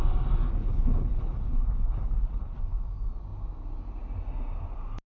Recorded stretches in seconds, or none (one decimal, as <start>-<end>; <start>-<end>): 0.0-0.6; 2.6-5.1

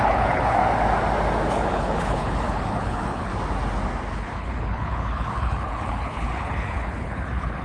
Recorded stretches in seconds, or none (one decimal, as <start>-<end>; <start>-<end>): 0.6-1.5; 3.3-4.1

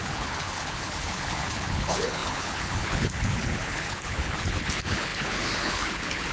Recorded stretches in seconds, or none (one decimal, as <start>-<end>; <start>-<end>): none

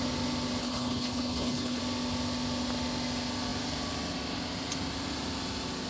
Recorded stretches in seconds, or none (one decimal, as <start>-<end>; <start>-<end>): 0.0-0.6; 1.8-5.9